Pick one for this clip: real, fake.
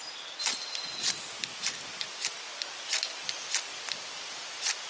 real